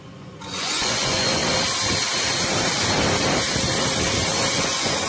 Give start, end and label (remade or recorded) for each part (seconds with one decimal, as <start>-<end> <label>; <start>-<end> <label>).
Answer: 0.0-1.4 remade; 1.4-4.5 recorded; 4.5-5.1 remade